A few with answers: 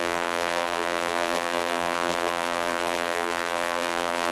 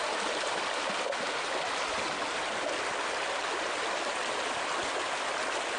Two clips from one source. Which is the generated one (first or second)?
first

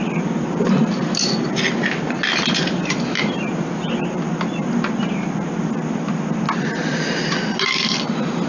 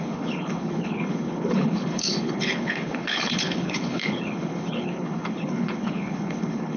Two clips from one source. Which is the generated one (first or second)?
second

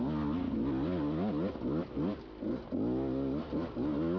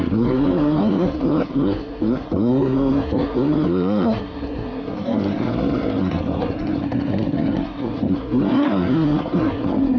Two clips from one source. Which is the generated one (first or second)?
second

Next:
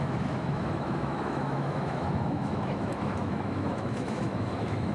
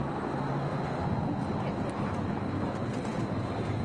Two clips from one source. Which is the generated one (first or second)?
first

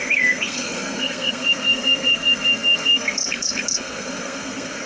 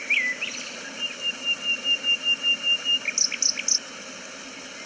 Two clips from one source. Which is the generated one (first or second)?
first